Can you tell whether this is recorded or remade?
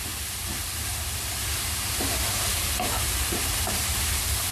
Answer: remade